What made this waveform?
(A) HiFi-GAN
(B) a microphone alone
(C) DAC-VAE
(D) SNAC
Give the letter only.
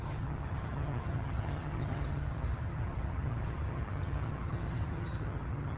A